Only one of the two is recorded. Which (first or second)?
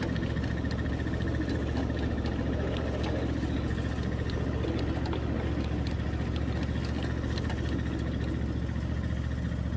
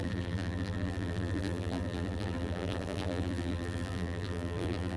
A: first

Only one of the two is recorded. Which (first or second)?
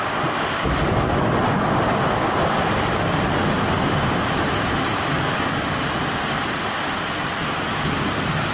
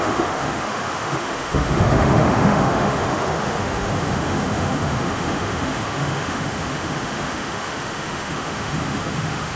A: first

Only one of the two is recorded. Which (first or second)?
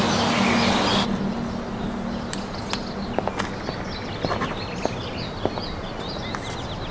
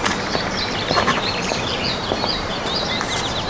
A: first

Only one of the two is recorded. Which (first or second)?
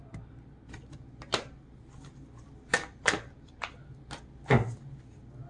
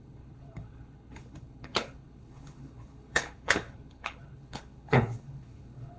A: first